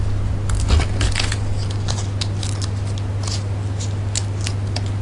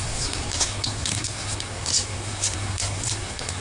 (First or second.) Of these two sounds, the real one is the first